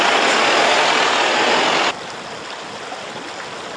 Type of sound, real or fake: real